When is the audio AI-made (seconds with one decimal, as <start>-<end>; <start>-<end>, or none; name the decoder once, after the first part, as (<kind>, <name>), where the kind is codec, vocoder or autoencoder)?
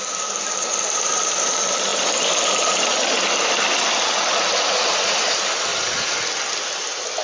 none